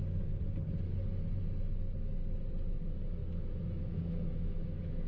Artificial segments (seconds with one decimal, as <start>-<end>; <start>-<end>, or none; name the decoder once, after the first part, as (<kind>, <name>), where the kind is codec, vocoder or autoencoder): 3.2-5.1 (autoencoder, DAC-VAE)